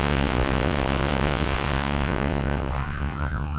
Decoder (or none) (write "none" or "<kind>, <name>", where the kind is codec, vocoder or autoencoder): vocoder, WaveNeXt